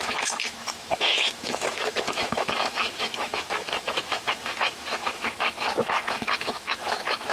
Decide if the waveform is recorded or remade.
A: remade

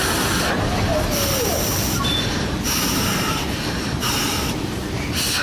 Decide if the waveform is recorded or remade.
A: recorded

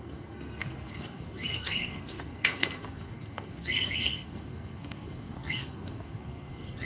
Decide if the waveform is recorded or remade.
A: remade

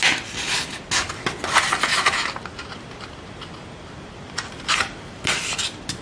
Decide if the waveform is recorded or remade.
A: recorded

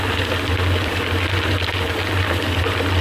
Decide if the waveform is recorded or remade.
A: recorded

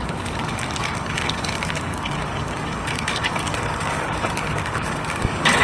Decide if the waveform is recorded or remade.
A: remade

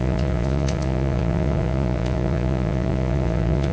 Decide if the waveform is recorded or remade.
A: remade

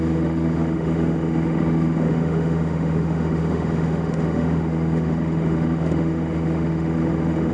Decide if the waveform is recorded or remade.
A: remade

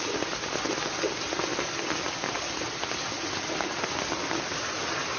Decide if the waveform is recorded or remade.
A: recorded